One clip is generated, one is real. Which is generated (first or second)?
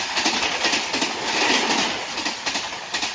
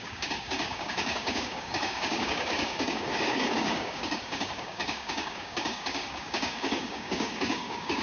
second